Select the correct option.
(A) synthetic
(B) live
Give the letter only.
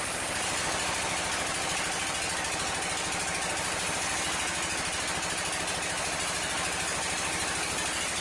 B